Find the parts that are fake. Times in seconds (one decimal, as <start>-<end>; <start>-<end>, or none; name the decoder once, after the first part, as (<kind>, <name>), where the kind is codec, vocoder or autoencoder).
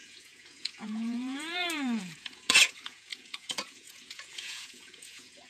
0.0-5.5 (vocoder, Vocos)